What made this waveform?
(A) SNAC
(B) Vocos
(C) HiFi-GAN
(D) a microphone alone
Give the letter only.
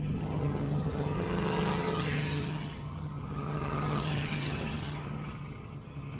C